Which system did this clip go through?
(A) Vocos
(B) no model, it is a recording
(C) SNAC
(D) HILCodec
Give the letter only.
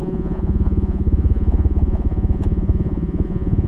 A